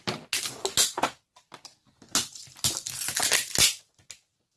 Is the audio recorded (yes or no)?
yes